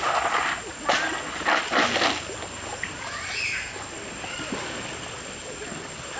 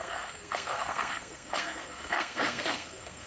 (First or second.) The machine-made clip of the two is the second